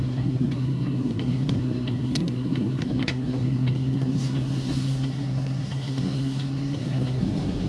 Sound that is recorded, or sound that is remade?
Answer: remade